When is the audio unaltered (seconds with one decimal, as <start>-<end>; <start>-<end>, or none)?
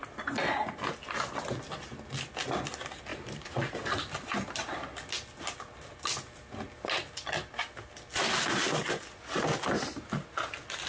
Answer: 0.0-3.1; 3.8-10.9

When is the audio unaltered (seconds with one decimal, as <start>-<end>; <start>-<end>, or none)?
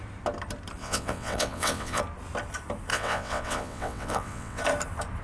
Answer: 0.0-0.8; 2.0-2.9; 4.6-5.2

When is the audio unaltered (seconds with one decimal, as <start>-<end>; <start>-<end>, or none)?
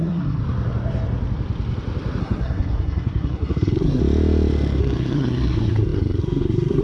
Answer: 0.4-2.2; 4.0-4.8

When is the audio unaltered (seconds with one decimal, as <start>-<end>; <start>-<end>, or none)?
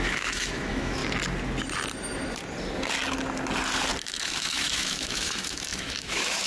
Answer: 1.0-4.0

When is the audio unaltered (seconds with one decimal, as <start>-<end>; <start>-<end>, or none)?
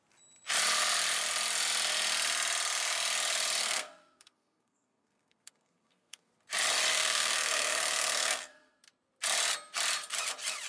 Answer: 0.0-3.6; 6.3-6.9; 8.8-10.7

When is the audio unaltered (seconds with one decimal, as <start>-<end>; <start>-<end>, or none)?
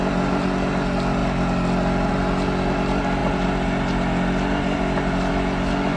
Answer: 0.0-6.0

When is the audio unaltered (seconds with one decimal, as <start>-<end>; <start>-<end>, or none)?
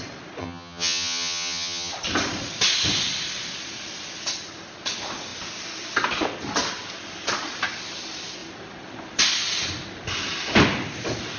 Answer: 0.0-0.4; 1.9-11.4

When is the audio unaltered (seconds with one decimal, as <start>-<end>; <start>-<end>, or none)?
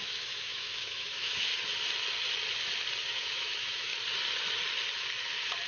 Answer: 1.5-3.1; 3.9-5.7